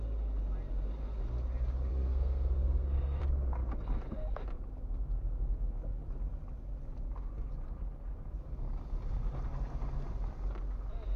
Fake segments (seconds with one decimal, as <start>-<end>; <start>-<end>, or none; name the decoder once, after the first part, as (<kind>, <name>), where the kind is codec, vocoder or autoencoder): 1.9-3.2 (codec, SNAC)